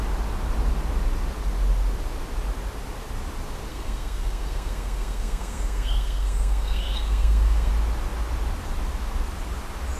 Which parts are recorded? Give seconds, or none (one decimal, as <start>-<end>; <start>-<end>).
0.0-3.7; 7.7-10.0